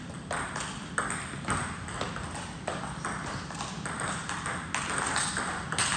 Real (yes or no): yes